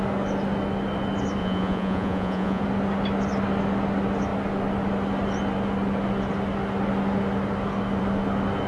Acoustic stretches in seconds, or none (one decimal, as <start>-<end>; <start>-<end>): 0.0-1.4; 2.6-8.7